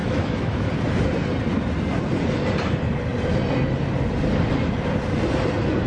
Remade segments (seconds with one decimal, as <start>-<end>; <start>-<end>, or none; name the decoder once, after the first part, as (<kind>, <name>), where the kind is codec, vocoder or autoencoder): 0.0-0.7 (autoencoder, DAC-VAE)